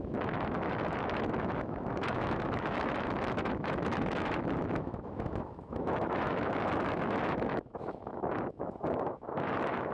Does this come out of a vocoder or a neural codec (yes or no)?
yes